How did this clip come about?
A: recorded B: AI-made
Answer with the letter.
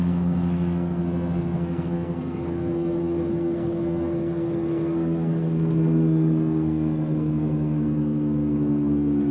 B